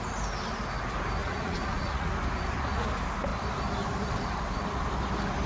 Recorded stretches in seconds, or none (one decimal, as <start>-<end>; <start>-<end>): 0.0-1.2; 2.1-5.5

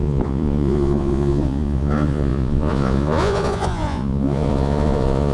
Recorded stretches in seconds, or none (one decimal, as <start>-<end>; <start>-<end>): none

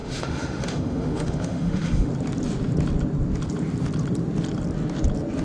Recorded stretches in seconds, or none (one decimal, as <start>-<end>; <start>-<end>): 2.1-5.4

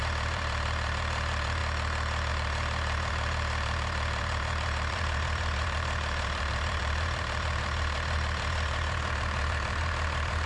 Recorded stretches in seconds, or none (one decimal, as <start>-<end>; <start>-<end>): 1.6-2.3

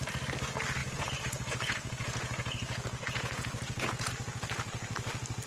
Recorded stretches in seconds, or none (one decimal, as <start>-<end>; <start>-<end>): 0.0-0.8; 4.1-5.5

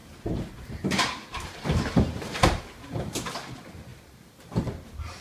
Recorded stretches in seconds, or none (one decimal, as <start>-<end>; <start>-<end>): 2.6-5.2

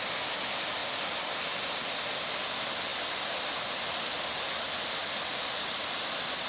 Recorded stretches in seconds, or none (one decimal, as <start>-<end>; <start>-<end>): 0.0-6.5

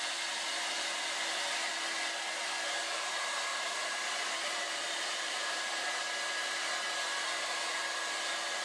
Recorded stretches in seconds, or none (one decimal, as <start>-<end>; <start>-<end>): 0.0-3.5; 5.7-8.6